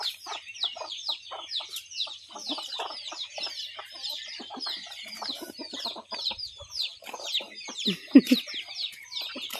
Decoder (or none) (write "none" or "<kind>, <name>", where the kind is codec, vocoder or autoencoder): vocoder, BigVGAN v2